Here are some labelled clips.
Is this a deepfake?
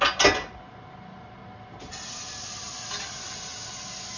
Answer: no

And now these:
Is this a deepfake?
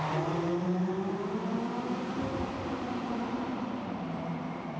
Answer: yes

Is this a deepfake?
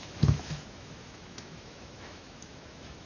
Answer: yes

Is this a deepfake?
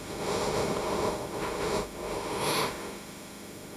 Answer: yes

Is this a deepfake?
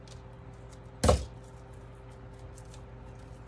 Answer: no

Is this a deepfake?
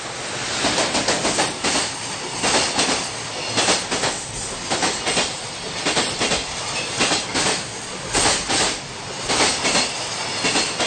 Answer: no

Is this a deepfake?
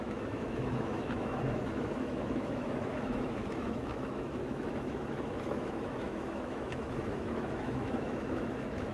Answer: yes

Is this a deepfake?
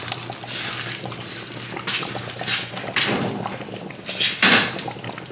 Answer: no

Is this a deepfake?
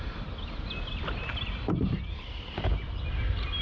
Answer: no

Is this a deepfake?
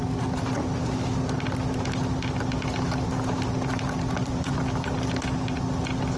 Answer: no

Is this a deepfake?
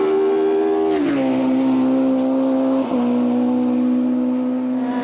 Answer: no